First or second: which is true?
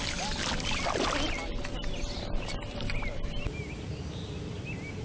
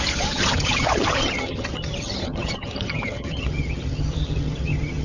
first